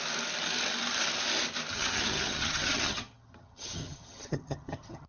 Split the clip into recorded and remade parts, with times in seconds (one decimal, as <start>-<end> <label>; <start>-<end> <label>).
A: 0.0-1.7 recorded; 1.7-5.1 remade